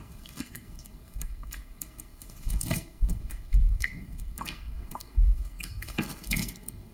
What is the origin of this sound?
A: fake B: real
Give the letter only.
A